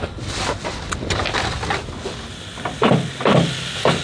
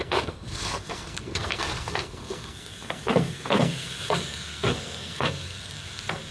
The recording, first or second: first